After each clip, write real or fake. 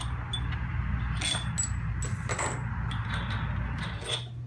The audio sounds real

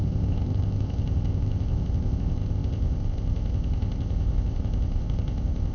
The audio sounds fake